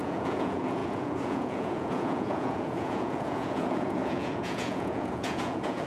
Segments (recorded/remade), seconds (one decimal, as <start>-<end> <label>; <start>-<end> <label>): 0.0-5.9 remade